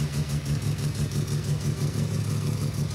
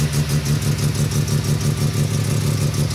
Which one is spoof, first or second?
first